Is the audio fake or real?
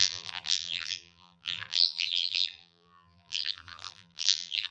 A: fake